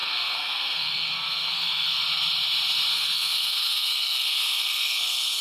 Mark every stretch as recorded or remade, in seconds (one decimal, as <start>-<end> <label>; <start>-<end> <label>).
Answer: 0.0-2.0 remade; 2.0-2.9 recorded; 2.9-5.4 remade